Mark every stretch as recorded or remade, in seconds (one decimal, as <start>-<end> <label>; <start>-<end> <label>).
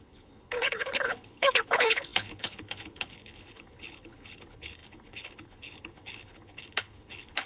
0.0-7.5 remade